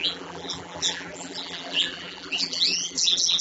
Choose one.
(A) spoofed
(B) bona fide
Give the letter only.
A